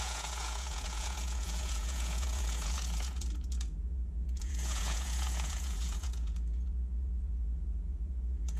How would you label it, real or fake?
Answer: fake